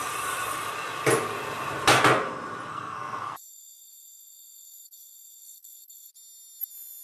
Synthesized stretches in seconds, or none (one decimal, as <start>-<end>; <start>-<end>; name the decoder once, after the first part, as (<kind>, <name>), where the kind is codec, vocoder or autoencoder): 2.7-6.1 (codec, SNAC)